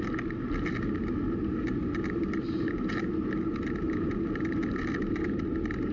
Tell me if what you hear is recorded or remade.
recorded